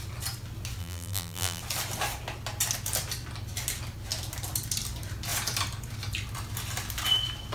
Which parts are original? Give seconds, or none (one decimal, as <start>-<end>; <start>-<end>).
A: 0.0-0.8; 1.6-7.5